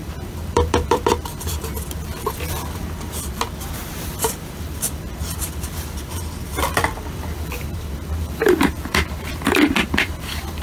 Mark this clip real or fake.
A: fake